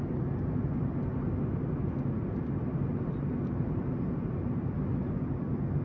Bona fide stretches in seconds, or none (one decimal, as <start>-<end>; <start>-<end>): 0.0-5.8